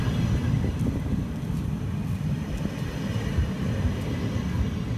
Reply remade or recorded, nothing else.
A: recorded